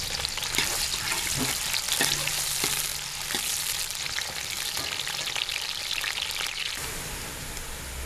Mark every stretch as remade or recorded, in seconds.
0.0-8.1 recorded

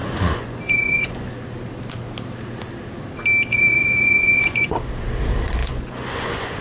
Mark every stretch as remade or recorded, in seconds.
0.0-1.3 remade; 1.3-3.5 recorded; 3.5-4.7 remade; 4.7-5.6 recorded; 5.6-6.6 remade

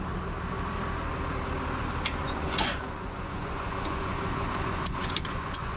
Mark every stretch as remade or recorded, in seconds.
0.0-2.2 recorded; 2.2-5.8 remade